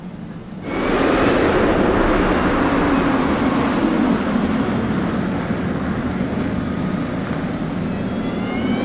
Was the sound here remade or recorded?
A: recorded